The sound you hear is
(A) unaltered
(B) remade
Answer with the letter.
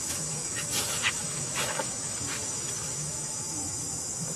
B